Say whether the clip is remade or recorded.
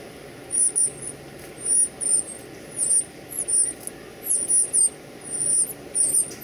recorded